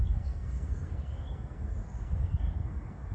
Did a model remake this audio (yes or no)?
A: yes